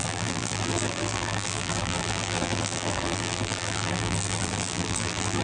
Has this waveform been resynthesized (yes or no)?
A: yes